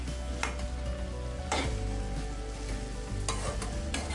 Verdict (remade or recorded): recorded